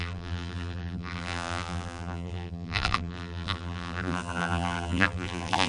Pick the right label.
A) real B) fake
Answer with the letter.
B